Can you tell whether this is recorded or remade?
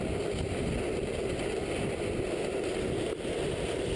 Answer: recorded